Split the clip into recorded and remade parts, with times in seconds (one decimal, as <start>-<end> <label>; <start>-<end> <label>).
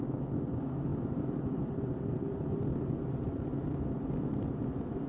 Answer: 0.0-5.1 recorded